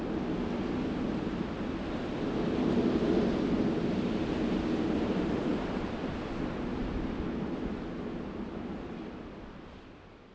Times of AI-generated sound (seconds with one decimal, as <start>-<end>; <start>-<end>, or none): none